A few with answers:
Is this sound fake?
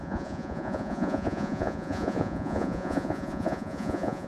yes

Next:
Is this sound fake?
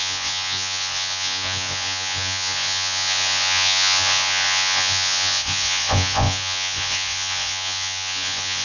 yes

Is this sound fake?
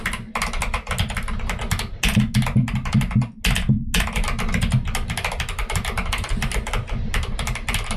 no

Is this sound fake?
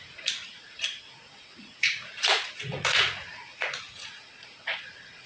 yes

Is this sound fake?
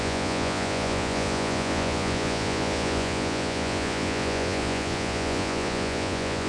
yes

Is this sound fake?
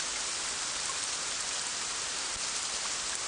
no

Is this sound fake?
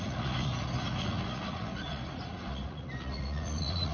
yes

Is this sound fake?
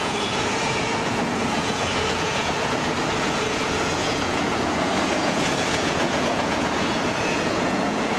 yes